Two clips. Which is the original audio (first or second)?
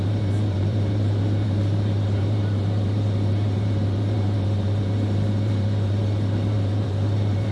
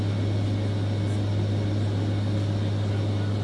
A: second